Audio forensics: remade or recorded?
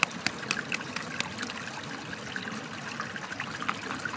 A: recorded